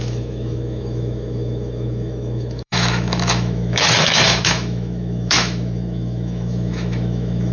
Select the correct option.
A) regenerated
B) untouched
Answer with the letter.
A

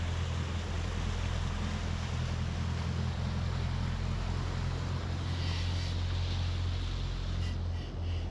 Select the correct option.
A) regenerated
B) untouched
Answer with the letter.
B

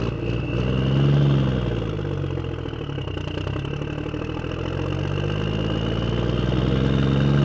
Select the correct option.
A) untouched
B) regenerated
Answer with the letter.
A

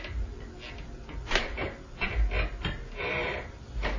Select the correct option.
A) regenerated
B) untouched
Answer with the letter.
B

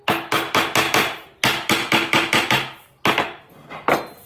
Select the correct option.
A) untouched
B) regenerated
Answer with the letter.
A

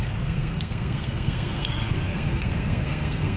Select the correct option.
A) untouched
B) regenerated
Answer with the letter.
B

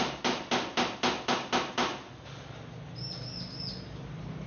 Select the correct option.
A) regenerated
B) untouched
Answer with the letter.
B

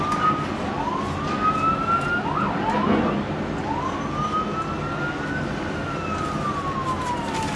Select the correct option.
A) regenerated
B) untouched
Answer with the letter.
B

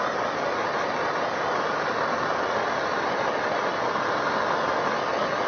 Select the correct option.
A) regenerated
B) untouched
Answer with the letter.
B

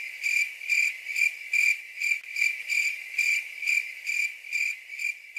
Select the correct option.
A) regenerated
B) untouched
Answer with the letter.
B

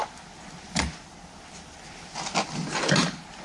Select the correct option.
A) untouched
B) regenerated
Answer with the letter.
A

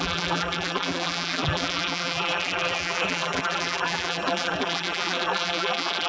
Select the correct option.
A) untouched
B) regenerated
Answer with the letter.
B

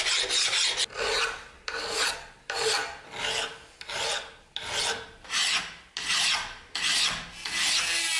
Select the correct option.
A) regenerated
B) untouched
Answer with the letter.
B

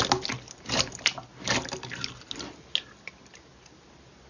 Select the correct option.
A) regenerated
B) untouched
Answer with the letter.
B